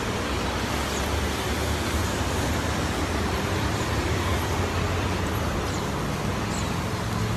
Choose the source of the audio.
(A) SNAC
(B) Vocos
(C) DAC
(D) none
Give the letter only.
D